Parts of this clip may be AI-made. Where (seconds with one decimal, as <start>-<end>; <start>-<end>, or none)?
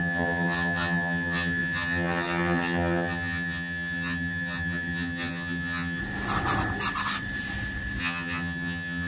0.0-6.0; 8.0-9.1